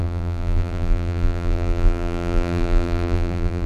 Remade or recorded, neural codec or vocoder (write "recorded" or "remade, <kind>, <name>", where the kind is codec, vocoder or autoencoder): remade, vocoder, BigVGAN v2